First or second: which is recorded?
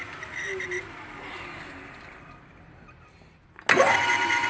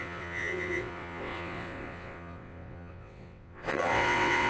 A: first